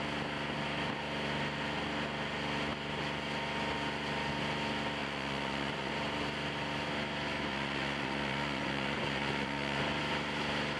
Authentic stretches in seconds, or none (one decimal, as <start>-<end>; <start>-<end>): 0.0-5.0; 5.9-7.5; 9.8-10.8